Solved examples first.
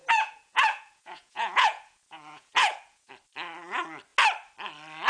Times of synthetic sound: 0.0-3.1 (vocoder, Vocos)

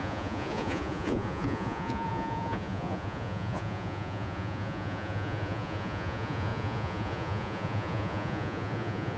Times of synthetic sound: 0.0-9.2 (vocoder, Vocos)

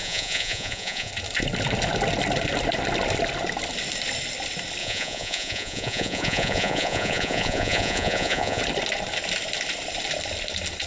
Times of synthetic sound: 0.0-1.1 (vocoder, Vocos); 4.8-8.6

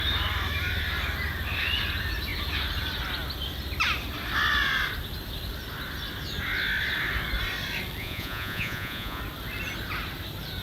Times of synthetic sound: 8.0-9.2 (vocoder, Vocos)

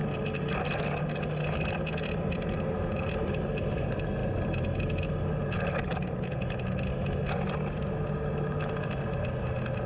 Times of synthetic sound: none

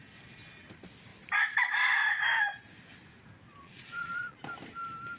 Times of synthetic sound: 3.6-4.4 (vocoder, Vocos)

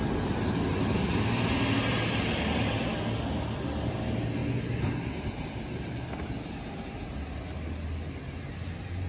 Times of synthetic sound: none